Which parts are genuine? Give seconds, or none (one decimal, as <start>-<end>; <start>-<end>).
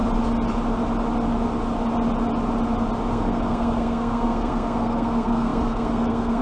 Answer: 0.0-3.1